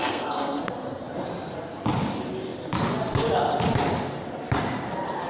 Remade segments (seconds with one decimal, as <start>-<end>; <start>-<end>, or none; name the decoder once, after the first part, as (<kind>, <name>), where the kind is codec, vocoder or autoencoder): 0.0-0.6 (codec, SNAC)